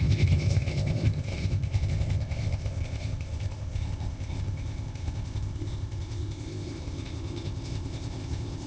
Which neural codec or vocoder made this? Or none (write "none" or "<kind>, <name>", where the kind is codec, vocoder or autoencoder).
codec, ZipCodec